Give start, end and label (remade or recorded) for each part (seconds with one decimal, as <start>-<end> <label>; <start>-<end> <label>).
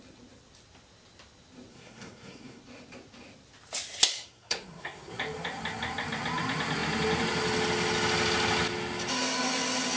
0.0-1.7 recorded; 1.7-2.6 remade; 2.6-4.1 recorded; 4.1-5.1 remade; 5.1-10.0 recorded